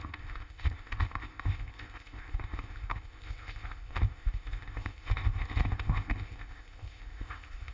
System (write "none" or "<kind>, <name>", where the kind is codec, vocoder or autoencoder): codec, ZipCodec